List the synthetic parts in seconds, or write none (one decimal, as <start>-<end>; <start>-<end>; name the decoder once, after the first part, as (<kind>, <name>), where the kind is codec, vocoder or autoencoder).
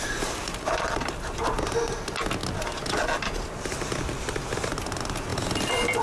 none